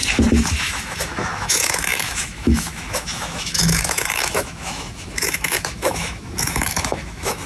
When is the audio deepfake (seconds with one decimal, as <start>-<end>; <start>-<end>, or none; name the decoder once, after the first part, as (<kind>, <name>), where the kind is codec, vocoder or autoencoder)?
0.6-7.5 (autoencoder, DAC-VAE)